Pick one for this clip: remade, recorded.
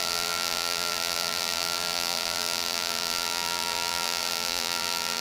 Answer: remade